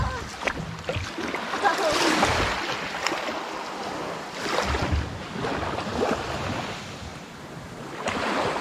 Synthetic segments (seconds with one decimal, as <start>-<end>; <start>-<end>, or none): none